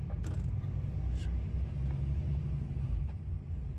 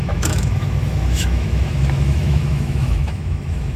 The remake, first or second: second